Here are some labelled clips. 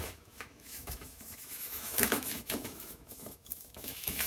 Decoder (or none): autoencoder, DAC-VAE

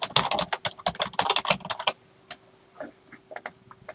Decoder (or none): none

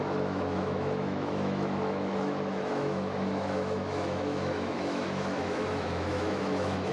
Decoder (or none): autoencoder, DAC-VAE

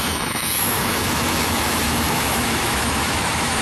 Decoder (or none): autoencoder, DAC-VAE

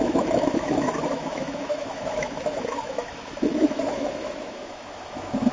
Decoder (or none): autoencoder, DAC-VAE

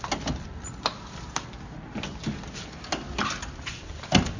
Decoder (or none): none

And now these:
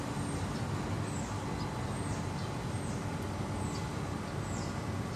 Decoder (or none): none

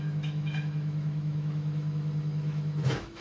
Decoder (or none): autoencoder, DAC-VAE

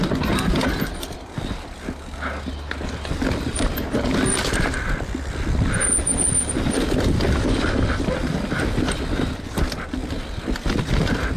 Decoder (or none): none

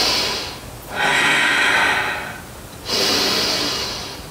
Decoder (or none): none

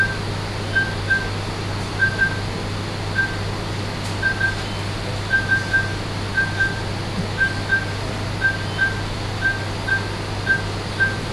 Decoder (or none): none